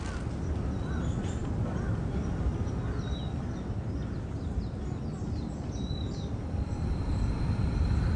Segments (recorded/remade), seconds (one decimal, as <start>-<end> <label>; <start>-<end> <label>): 0.0-8.2 recorded